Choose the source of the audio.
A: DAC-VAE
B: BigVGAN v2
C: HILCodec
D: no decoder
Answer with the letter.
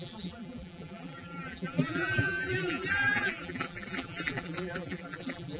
B